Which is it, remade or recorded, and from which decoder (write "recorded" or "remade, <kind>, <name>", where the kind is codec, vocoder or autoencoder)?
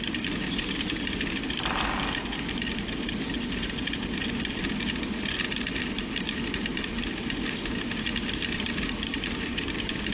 recorded